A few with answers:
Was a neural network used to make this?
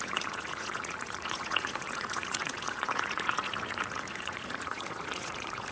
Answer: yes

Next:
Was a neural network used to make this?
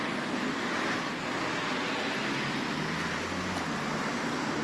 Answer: no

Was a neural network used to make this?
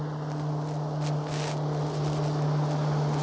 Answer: no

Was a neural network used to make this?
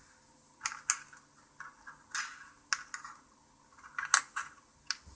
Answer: no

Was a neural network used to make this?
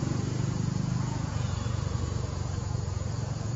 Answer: yes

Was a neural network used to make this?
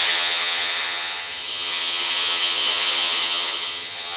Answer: yes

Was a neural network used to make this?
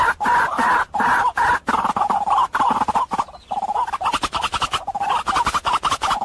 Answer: no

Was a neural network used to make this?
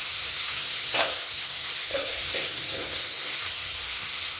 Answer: yes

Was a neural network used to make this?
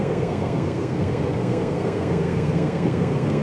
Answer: yes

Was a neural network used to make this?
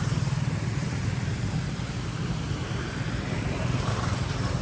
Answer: yes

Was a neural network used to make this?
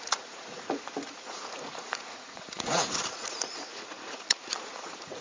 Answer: yes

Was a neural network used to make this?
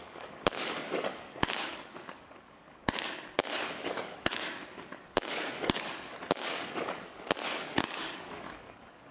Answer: yes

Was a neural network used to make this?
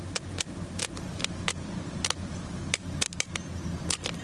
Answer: no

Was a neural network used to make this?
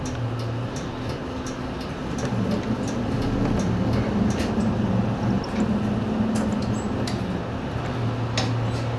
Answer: no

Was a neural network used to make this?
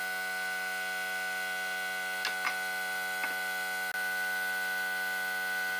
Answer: no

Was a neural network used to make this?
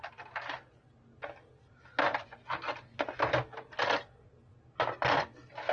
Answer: no